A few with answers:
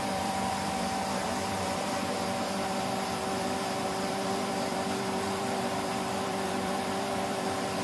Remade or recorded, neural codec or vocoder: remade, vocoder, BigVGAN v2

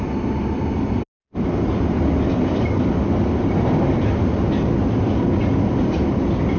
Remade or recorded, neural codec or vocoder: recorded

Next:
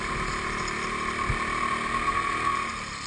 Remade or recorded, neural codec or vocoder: remade, vocoder, BigVGAN v2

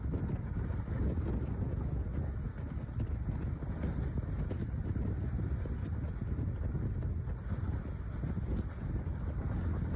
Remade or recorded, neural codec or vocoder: recorded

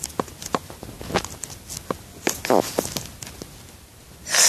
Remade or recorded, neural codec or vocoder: recorded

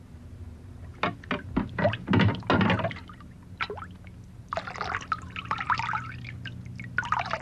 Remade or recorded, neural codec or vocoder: recorded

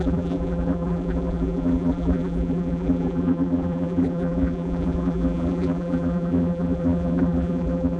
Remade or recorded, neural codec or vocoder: remade, vocoder, BigVGAN v2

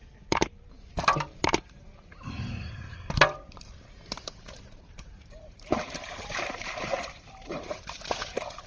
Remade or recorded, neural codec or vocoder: remade, vocoder, BigVGAN v2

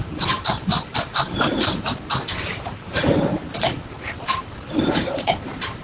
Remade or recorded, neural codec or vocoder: remade, vocoder, BigVGAN v2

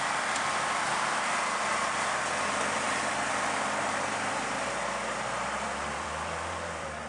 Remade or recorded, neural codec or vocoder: remade, vocoder, BigVGAN v2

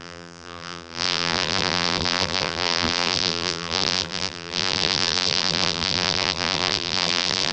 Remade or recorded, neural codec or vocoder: remade, vocoder, BigVGAN v2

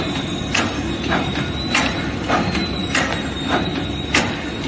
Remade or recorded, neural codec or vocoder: recorded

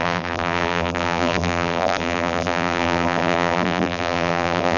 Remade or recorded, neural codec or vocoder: remade, vocoder, BigVGAN v2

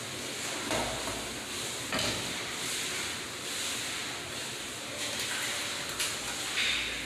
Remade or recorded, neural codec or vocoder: recorded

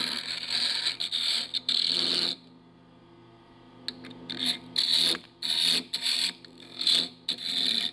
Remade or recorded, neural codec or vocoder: recorded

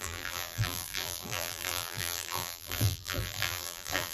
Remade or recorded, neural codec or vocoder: remade, vocoder, BigVGAN v2